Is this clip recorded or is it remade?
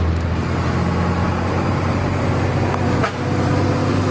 recorded